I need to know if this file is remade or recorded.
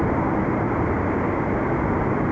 recorded